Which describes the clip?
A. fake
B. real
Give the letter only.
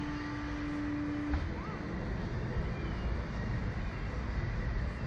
B